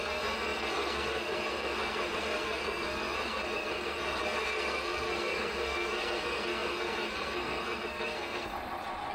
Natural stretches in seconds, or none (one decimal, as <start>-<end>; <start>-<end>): 8.5-9.1